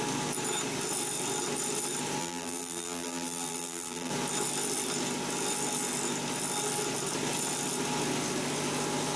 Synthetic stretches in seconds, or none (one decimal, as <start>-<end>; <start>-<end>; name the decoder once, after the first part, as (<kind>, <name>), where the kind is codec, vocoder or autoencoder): 2.2-4.1 (vocoder, BigVGAN v2)